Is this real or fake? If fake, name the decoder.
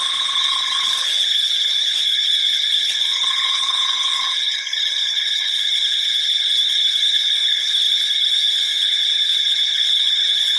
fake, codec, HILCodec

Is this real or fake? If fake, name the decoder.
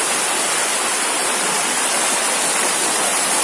real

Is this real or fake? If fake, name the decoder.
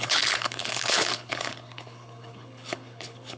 fake, codec, HILCodec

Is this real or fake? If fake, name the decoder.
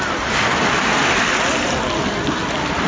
real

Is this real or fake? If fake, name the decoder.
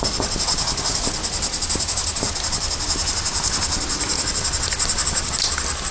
real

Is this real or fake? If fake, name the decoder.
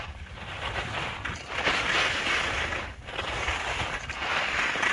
real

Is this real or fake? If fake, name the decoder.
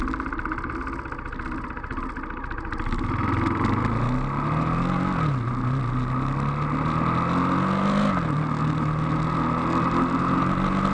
real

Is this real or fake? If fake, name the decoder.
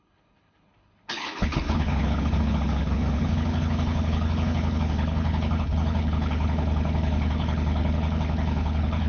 fake, codec, HILCodec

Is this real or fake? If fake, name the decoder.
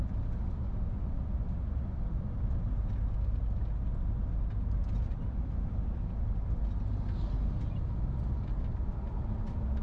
real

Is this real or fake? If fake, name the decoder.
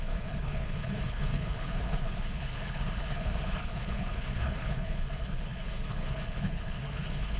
fake, codec, HILCodec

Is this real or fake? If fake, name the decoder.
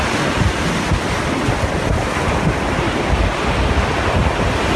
real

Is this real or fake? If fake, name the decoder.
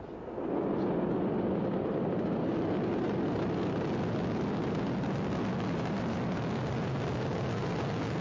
real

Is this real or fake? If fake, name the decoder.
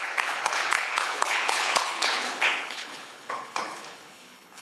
fake, codec, HILCodec